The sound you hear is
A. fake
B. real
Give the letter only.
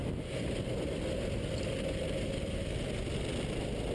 B